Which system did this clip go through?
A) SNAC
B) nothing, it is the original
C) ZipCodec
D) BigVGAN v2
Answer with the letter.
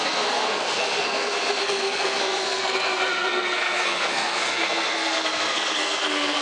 A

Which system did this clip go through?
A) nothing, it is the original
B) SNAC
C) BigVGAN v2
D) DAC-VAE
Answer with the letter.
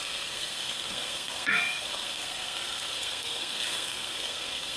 B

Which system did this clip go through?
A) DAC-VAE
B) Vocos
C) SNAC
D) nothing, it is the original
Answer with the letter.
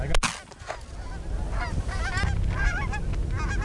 D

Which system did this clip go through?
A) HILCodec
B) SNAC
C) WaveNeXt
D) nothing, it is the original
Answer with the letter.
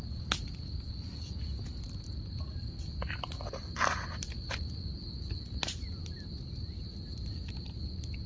D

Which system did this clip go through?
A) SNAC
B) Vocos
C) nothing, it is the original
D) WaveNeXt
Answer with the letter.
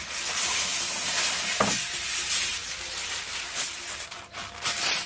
C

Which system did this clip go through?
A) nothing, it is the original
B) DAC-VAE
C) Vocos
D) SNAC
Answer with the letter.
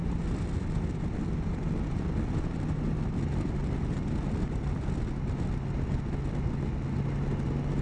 A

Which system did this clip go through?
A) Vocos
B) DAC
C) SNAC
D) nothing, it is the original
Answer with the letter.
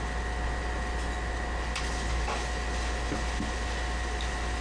D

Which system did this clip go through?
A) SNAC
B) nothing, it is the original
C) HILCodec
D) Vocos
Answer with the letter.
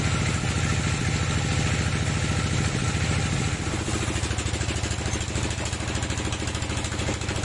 B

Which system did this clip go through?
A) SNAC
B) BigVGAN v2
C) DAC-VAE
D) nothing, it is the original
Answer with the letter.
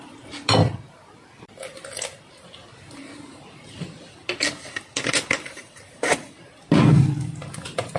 D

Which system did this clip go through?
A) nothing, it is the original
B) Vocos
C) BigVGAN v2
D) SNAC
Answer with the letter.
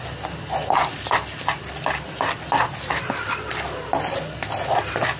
A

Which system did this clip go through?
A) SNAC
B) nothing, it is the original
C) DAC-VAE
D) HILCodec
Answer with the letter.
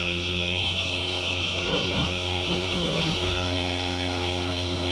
A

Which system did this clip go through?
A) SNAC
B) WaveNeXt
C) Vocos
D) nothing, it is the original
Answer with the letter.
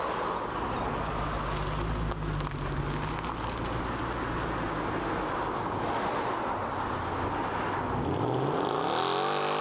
D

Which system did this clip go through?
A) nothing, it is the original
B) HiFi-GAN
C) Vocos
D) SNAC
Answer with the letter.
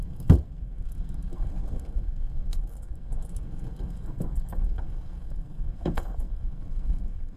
D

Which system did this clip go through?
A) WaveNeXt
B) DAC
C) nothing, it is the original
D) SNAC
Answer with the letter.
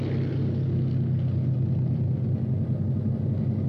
C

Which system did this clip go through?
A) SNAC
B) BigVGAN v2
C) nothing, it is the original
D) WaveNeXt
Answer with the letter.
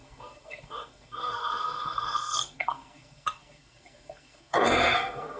A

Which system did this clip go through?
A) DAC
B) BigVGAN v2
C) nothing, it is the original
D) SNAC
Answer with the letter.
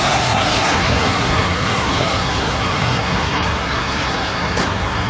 D